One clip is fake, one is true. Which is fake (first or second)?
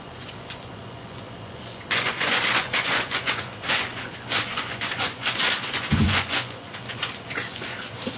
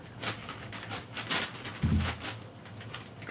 first